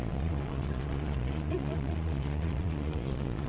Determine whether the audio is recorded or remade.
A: remade